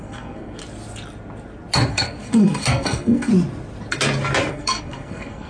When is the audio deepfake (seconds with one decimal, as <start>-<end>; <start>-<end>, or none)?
0.0-0.6; 1.9-3.3; 4.5-5.5